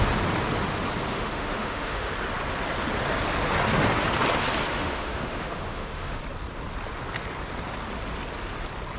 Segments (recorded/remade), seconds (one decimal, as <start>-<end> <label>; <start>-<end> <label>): 0.0-1.1 recorded; 1.1-2.1 remade; 2.1-4.7 recorded; 4.7-6.2 remade; 6.2-9.0 recorded